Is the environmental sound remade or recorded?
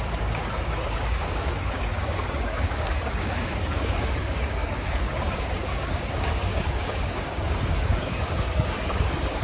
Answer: remade